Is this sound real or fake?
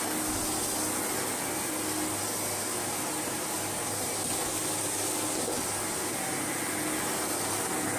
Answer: real